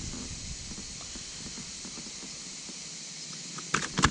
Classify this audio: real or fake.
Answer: real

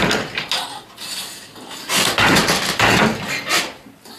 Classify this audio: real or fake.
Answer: real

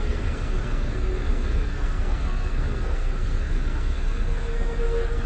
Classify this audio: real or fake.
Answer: fake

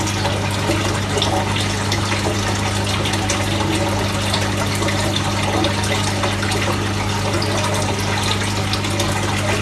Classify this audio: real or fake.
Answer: real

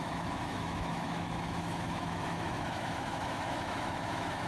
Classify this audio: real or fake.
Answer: fake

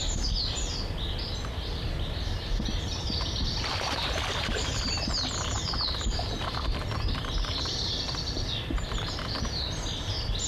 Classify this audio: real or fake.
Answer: fake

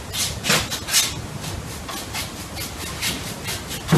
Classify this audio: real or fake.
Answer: real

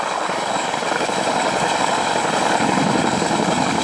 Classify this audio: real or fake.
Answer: fake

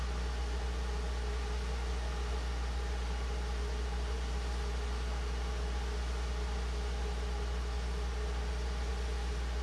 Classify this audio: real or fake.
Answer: real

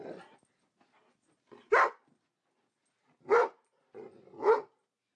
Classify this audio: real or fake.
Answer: fake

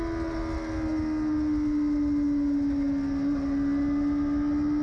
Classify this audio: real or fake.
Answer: real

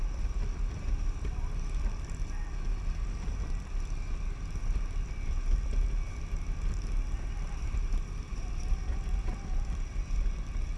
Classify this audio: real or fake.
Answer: real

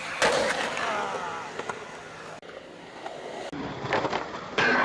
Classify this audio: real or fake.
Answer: real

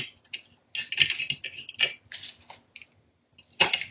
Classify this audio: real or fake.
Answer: real